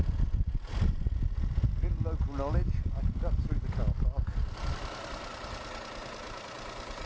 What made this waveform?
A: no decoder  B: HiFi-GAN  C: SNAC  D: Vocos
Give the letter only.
A